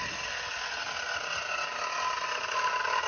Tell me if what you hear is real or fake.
real